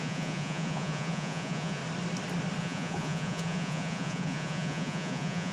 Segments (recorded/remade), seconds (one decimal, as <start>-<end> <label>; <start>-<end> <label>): 0.0-1.8 remade; 1.8-2.6 recorded; 2.6-5.5 remade